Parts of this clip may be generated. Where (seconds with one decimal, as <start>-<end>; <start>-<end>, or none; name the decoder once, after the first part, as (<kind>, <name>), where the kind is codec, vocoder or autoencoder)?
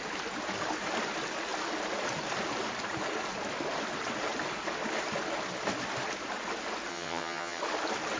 6.9-7.6 (vocoder, HiFi-GAN)